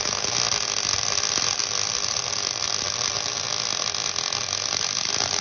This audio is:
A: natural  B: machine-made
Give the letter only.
A